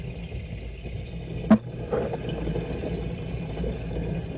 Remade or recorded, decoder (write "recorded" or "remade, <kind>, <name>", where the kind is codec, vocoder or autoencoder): recorded